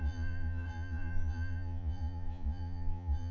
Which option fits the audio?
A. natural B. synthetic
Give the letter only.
B